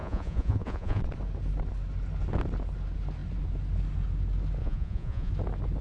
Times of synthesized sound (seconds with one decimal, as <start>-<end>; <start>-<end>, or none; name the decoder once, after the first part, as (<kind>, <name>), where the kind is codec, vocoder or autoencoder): 0.0-1.0 (vocoder, Vocos); 4.6-5.3